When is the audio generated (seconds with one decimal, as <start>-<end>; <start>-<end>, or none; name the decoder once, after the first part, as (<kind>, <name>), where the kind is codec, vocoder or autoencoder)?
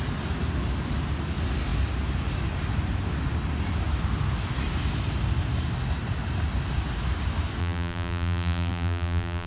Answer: 7.6-9.5 (vocoder, BigVGAN v2)